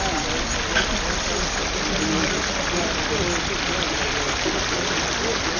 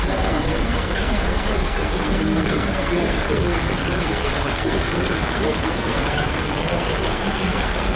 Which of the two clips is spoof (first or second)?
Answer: second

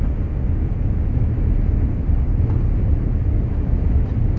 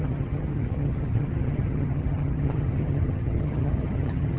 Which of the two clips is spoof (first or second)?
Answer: second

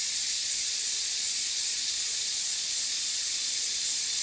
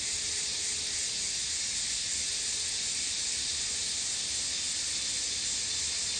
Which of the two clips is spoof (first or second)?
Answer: first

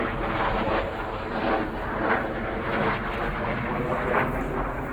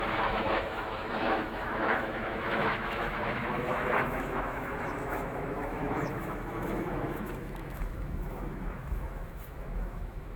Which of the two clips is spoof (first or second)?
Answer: second